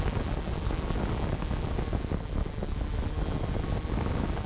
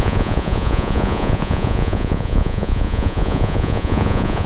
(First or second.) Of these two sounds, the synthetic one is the second